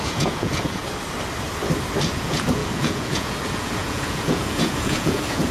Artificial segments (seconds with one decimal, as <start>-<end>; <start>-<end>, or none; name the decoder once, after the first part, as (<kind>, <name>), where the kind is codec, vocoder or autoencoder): 0.0-0.8 (vocoder, Vocos); 2.1-5.5

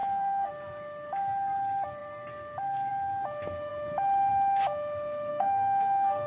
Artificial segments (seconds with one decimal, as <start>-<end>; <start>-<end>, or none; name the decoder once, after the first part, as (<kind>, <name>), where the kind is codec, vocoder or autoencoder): 0.0-0.5 (codec, SNAC); 5.3-6.3

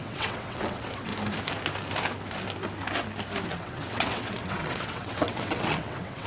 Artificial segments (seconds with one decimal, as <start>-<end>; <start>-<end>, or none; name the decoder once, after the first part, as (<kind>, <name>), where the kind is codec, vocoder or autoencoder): 0.0-1.1 (vocoder, WaveNeXt); 3.5-6.3

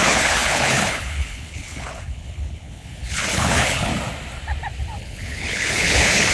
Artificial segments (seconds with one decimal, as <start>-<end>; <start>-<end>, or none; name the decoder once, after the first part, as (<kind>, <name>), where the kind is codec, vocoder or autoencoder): 0.0-3.9 (codec, HILCodec); 5.0-6.3

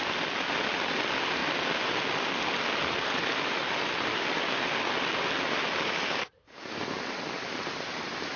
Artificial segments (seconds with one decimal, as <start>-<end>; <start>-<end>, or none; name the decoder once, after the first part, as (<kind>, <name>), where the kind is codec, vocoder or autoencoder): none

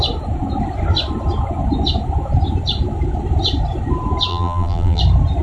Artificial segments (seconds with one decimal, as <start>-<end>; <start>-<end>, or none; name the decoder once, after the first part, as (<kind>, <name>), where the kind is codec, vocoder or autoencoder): 4.3-5.0 (vocoder, BigVGAN v2)

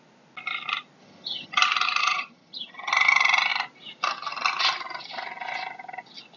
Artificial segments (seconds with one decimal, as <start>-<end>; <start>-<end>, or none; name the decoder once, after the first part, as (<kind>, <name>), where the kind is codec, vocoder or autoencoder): 1.0-1.6 (vocoder, HiFi-GAN); 2.0-2.9